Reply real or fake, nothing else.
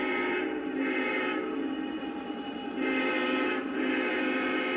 fake